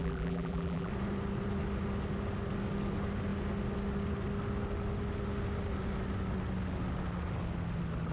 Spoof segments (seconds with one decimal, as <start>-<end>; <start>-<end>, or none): 0.0-0.9